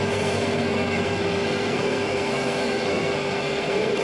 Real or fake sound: fake